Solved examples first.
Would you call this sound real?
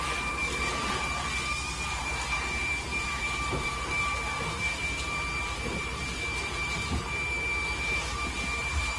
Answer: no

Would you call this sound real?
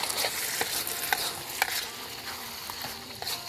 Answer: yes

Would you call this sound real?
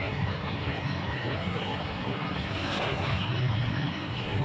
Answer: no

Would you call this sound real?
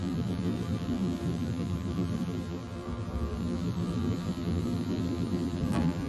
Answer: no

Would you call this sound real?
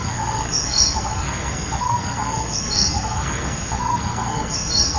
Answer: no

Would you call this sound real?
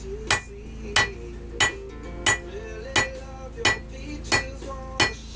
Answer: yes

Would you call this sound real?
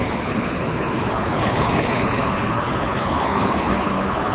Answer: no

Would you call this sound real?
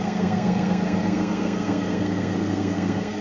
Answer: no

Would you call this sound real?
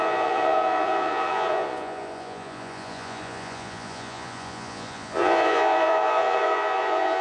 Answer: no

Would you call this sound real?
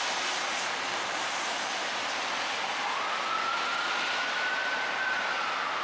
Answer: yes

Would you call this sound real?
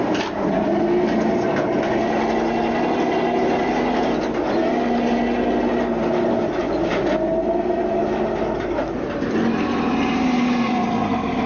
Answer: yes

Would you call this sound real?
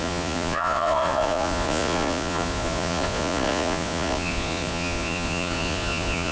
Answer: no